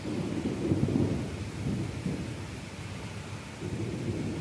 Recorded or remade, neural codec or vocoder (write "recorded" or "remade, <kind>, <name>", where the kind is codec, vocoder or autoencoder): recorded